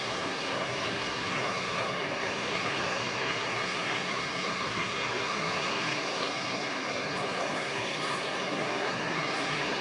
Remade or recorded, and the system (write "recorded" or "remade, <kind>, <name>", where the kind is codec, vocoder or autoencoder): remade, codec, SNAC